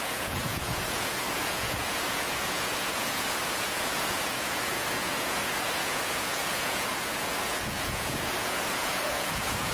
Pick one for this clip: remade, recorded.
remade